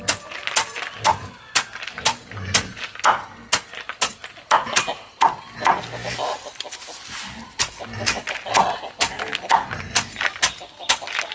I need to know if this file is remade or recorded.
recorded